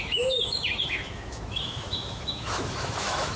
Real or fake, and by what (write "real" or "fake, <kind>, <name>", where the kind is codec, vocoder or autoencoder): fake, autoencoder, DAC-VAE